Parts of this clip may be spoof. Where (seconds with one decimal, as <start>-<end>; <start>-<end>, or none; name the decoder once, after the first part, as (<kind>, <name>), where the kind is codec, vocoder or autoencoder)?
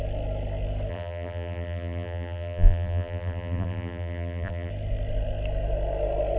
0.9-4.7 (vocoder, BigVGAN v2)